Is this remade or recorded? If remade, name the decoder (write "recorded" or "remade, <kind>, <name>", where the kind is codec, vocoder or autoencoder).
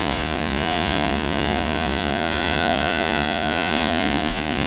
remade, vocoder, Vocos